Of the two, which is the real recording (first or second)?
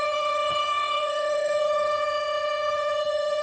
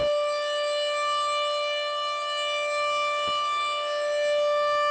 second